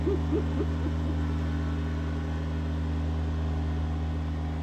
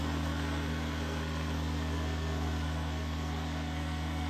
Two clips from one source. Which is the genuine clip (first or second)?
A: first